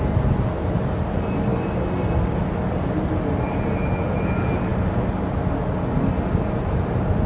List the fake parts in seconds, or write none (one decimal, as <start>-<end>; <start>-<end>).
none